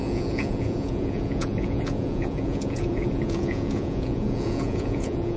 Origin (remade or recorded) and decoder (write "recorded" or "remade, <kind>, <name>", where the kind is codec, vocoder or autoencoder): remade, vocoder, Vocos